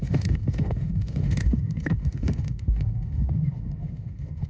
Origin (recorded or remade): remade